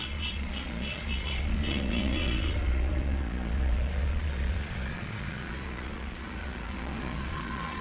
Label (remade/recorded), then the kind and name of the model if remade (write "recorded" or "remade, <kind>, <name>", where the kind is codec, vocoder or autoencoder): remade, vocoder, Vocos